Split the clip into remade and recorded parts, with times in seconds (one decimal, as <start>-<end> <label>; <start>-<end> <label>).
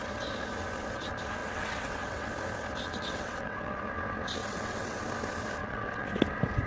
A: 0.0-1.4 recorded; 1.4-2.3 remade; 2.3-2.9 recorded; 2.9-3.9 remade; 3.9-4.4 recorded; 4.4-5.0 remade; 5.0-5.6 recorded; 5.6-6.2 remade; 6.2-6.7 recorded